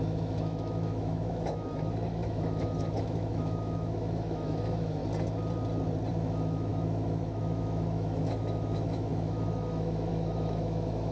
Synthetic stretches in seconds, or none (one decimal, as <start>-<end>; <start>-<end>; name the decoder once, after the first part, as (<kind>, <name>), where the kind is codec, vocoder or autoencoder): 0.0-5.0 (autoencoder, DAC-VAE); 6.1-11.1